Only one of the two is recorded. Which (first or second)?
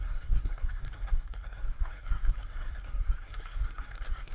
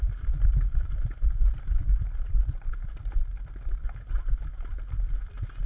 second